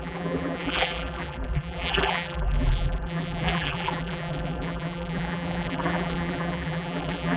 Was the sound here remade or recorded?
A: remade